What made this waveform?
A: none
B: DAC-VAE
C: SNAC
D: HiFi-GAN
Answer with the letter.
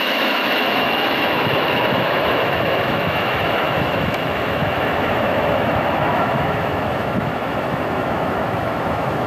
B